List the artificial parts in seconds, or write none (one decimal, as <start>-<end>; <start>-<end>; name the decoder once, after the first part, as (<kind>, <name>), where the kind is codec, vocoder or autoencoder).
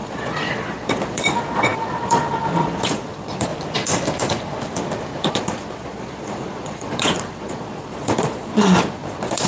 0.0-3.5 (vocoder, Vocos); 5.3-9.5